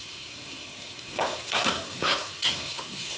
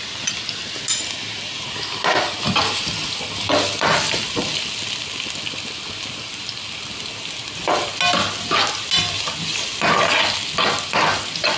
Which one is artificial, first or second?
first